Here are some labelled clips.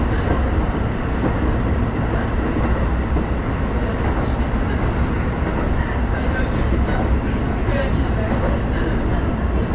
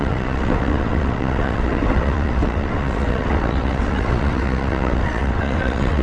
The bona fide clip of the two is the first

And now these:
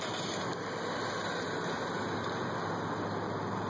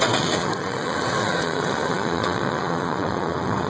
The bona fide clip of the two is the first